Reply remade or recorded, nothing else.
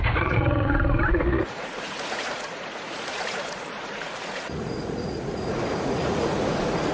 remade